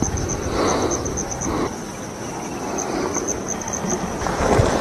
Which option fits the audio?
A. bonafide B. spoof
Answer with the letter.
A